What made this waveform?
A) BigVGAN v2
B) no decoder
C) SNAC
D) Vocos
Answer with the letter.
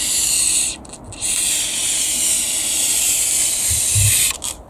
B